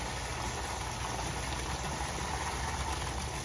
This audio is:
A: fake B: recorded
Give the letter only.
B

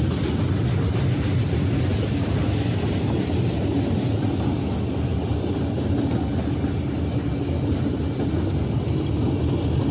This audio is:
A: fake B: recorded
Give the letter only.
B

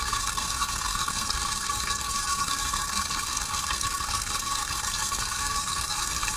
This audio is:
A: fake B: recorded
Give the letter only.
A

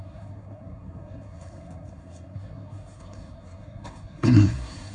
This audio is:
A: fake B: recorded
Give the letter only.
A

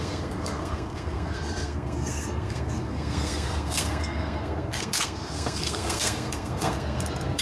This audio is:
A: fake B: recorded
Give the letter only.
A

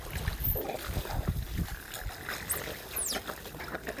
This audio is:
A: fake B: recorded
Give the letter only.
B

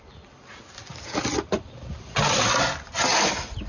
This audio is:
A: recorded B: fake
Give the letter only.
A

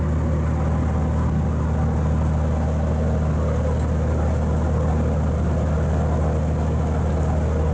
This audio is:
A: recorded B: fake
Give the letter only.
A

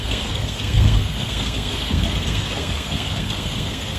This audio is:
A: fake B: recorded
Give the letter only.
A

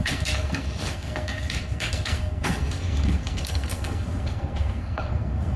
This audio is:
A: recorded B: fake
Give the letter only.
B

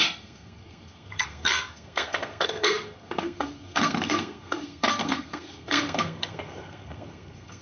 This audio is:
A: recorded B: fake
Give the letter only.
B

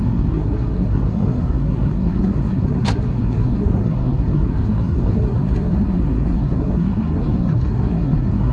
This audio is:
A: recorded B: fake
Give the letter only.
B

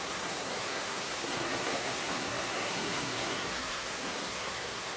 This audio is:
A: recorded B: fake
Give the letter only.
B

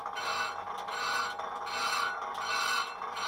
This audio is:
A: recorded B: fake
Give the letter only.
A